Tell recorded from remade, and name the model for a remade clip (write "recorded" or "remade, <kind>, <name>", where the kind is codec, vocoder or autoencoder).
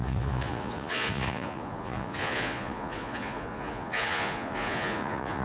remade, vocoder, Vocos